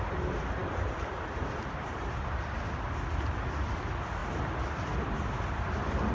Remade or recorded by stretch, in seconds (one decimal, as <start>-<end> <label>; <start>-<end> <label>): 0.0-6.1 recorded